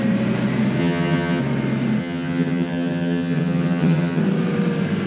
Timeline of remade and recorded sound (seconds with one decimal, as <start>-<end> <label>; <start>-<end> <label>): 0.0-0.8 recorded; 0.8-1.4 remade; 1.4-2.0 recorded; 2.0-4.2 remade; 4.2-5.1 recorded